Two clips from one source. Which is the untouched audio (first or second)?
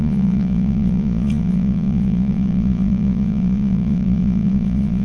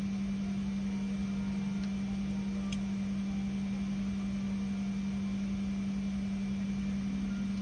second